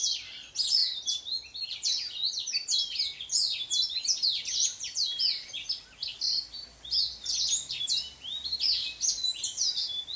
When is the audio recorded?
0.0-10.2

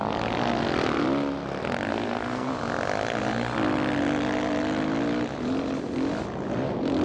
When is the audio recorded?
0.0-1.9; 2.5-7.0

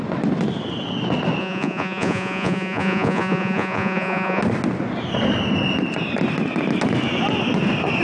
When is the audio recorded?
0.0-1.4; 4.4-8.0

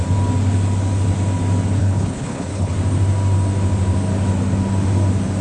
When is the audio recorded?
0.0-1.8; 2.7-5.4

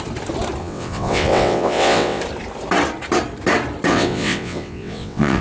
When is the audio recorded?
0.0-0.6; 2.2-3.9

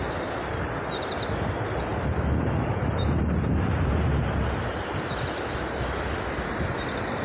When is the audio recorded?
0.0-7.2

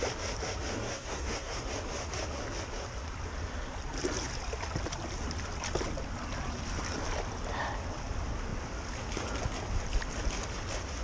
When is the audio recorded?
0.0-0.8; 1.6-11.0

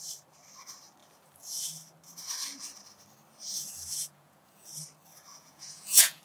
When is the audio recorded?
0.0-4.0; 4.7-5.3